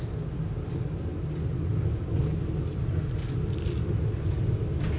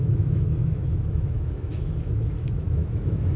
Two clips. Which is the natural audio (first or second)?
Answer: first